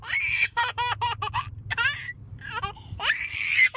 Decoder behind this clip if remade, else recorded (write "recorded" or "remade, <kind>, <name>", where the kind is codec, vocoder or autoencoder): recorded